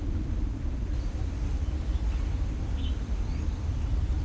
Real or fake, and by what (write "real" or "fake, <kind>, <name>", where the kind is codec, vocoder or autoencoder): real